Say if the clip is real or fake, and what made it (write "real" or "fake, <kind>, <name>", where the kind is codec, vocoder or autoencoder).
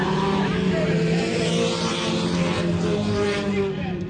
fake, vocoder, BigVGAN v2